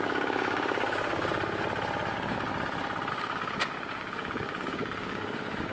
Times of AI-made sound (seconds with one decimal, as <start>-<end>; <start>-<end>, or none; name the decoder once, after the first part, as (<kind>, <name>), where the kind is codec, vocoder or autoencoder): 0.0-1.3 (codec, DAC); 2.1-2.5; 3.1-5.7